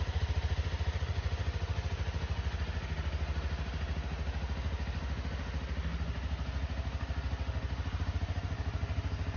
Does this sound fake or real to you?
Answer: real